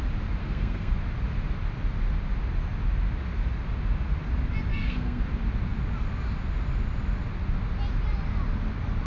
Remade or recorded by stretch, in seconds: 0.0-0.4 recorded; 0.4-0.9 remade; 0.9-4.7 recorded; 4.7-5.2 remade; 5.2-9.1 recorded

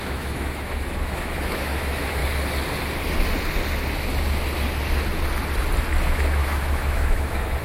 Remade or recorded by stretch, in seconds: 0.0-2.2 remade; 2.2-6.0 recorded; 6.0-7.6 remade

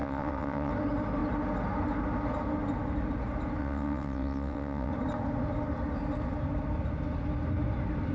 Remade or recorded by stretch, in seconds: 0.0-0.7 remade; 0.7-3.6 recorded; 3.6-4.9 remade; 4.9-8.1 recorded

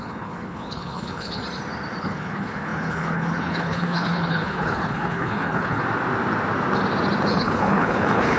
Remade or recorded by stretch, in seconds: 0.0-1.4 remade; 1.4-2.0 recorded; 2.0-5.8 remade; 5.8-7.3 recorded; 7.3-8.4 remade